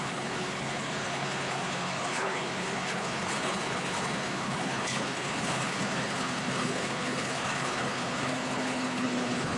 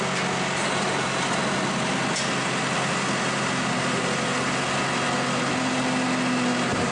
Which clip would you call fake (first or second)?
first